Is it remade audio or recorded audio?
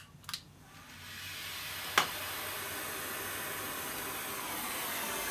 recorded